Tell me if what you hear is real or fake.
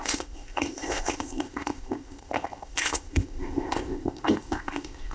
fake